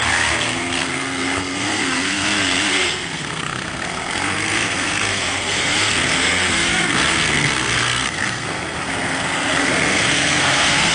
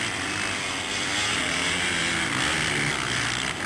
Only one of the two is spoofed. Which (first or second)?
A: first